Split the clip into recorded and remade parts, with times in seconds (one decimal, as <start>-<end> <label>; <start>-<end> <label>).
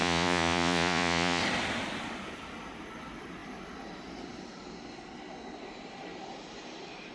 0.0-1.4 remade; 1.4-7.1 recorded